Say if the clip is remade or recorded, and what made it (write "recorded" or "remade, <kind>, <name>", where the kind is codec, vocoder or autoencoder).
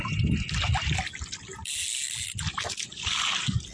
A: recorded